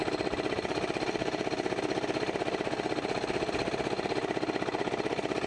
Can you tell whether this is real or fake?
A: real